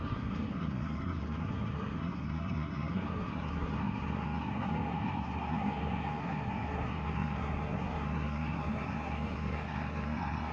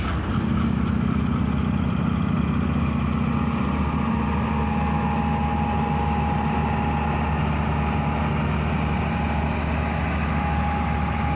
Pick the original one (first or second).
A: second